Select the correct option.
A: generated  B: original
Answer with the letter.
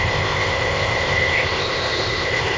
A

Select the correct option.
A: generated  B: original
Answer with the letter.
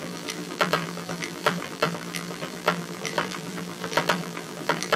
A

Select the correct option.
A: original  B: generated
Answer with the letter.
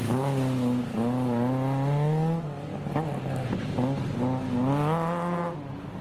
A